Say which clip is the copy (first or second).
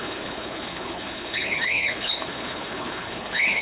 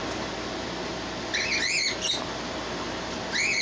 first